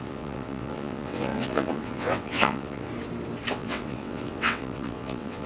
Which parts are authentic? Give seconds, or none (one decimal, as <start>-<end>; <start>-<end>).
2.9-3.5